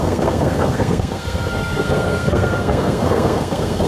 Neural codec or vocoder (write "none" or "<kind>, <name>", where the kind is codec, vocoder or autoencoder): codec, SNAC